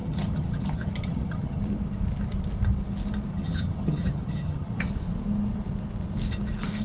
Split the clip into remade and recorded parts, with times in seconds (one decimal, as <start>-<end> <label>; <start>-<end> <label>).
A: 0.0-1.6 remade; 1.6-3.3 recorded; 3.3-4.9 remade; 4.9-6.8 recorded